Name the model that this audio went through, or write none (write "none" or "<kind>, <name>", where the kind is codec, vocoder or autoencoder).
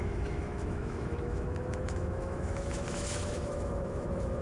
autoencoder, DAC-VAE